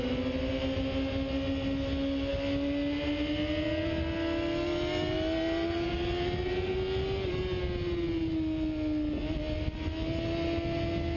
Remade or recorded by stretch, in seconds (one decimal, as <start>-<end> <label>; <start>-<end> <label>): 0.0-11.2 recorded